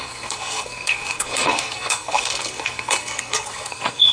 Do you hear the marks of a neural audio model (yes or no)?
yes